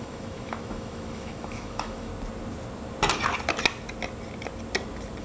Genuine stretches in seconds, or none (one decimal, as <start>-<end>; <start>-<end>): 2.1-5.2